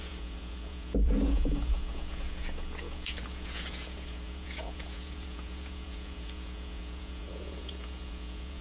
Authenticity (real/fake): fake